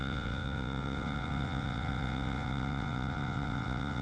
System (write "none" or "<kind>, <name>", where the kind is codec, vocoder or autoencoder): vocoder, WaveNeXt